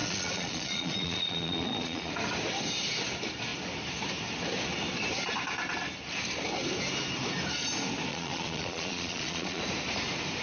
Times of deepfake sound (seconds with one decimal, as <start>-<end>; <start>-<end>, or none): 0.0-2.1; 8.1-9.6